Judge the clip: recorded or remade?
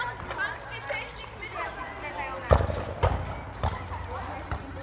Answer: recorded